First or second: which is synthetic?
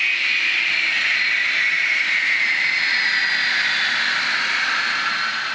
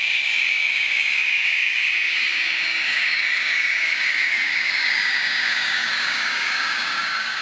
second